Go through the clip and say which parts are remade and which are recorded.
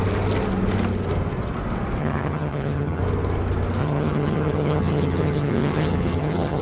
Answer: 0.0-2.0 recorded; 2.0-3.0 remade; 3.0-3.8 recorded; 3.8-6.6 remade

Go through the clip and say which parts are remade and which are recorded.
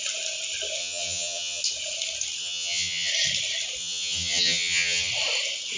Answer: 0.0-0.8 recorded; 0.8-1.6 remade; 1.6-2.4 recorded; 2.4-3.1 remade; 3.1-3.8 recorded; 3.8-5.1 remade; 5.1-5.8 recorded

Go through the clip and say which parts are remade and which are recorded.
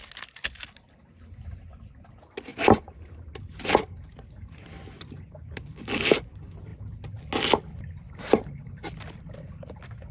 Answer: 0.0-10.1 recorded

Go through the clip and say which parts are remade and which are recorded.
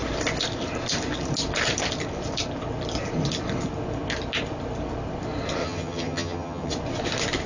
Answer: 0.0-5.6 recorded; 5.6-6.7 remade; 6.7-7.5 recorded